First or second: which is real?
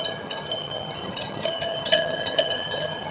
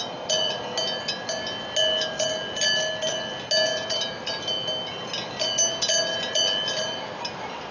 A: second